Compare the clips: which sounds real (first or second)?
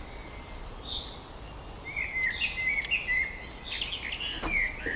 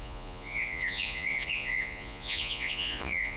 first